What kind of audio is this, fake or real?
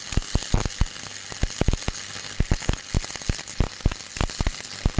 real